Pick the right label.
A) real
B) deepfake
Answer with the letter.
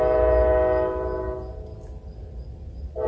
A